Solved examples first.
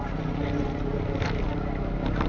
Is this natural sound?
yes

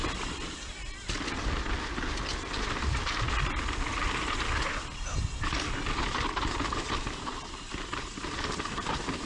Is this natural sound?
yes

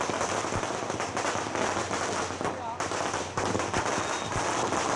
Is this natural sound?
yes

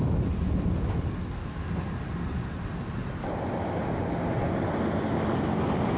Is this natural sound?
yes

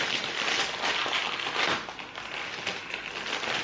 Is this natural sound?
yes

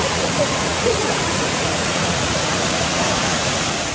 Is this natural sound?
no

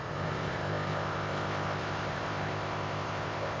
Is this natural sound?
no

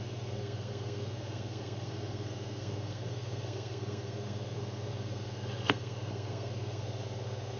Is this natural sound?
no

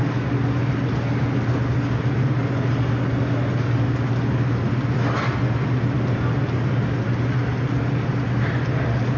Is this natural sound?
yes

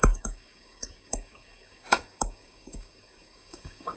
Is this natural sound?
no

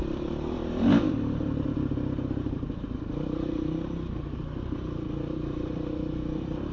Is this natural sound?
no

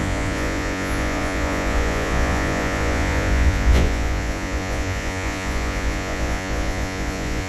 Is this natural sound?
no